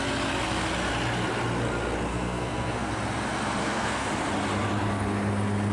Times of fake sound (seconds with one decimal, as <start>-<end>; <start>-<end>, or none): 2.1-2.9; 3.6-4.1